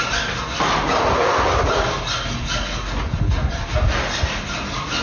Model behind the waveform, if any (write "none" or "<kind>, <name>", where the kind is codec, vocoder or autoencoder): none